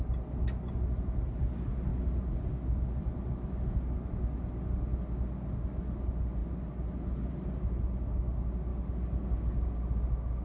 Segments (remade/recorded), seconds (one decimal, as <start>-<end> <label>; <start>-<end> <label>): 0.0-10.4 recorded